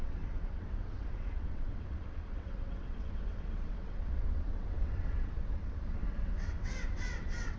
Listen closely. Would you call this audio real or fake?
fake